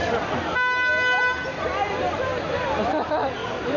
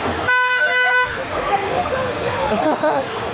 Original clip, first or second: first